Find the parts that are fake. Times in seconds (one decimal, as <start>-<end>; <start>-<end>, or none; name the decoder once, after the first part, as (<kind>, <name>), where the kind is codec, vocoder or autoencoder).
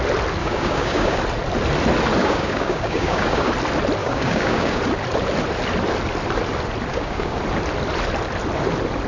0.4-1.2 (codec, DAC); 2.2-3.5; 4.0-4.8; 6.9-7.4